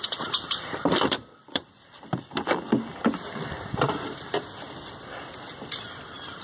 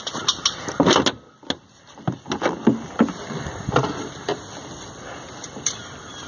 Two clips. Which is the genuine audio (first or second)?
second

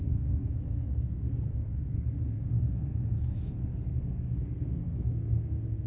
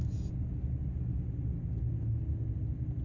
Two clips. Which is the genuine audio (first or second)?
second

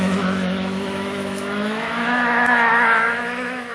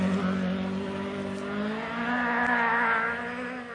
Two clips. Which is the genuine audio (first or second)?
second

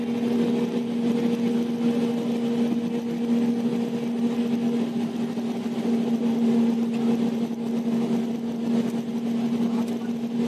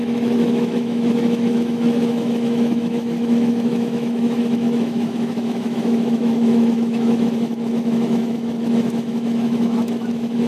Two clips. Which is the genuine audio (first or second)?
first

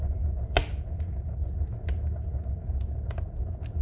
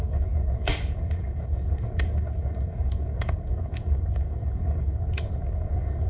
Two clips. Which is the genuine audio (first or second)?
first